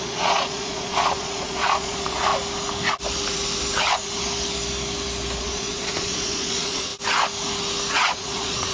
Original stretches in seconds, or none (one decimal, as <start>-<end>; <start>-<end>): 2.3-5.4; 6.9-7.9